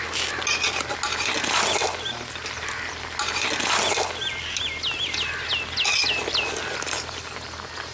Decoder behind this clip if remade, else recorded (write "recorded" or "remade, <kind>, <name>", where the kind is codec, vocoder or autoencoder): recorded